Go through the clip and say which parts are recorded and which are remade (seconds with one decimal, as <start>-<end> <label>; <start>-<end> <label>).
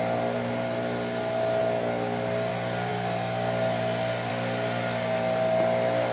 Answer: 0.0-6.1 recorded